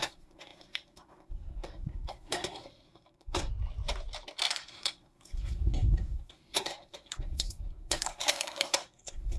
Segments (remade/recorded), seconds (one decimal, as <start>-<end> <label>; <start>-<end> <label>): 0.0-3.5 remade; 3.5-4.5 recorded; 4.5-9.4 remade

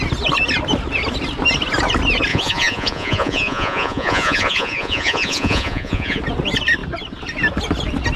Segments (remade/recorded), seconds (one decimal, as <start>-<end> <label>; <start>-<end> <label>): 0.0-2.3 recorded; 2.3-6.2 remade; 6.2-8.2 recorded

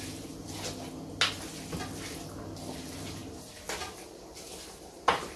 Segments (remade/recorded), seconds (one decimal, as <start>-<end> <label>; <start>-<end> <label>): 0.0-5.4 recorded

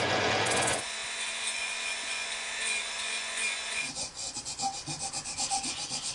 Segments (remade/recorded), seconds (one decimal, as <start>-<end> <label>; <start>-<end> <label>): 0.0-4.7 remade; 4.7-5.5 recorded; 5.5-6.1 remade

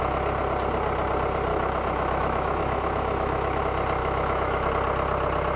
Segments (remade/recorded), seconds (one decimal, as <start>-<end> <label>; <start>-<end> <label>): 0.0-1.5 recorded; 1.5-3.6 remade; 3.6-4.0 recorded; 4.0-4.7 remade; 4.7-5.6 recorded

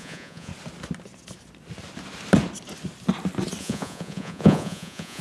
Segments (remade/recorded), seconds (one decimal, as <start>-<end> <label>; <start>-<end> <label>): 0.0-0.5 remade; 0.5-3.6 recorded; 3.6-5.2 remade

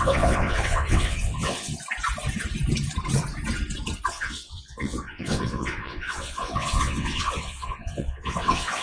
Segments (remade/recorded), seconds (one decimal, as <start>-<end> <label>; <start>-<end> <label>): 0.0-1.7 remade; 1.7-4.1 recorded; 4.1-8.8 remade